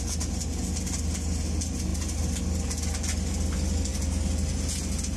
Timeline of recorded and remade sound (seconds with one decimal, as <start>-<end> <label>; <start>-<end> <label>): 0.0-5.2 recorded